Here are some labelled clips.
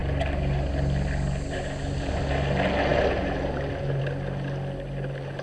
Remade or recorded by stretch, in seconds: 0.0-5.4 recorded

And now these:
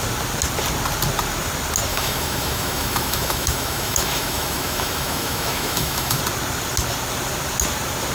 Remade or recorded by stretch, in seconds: 0.0-1.9 recorded; 1.9-6.2 remade; 6.2-8.1 recorded

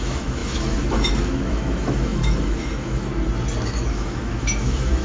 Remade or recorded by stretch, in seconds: 0.0-3.1 remade; 3.1-3.7 recorded; 3.7-5.0 remade

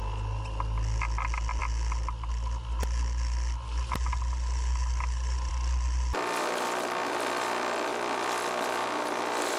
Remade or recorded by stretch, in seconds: 0.0-9.6 recorded